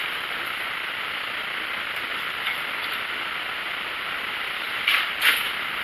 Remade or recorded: remade